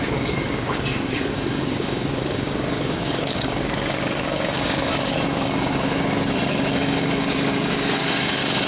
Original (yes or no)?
no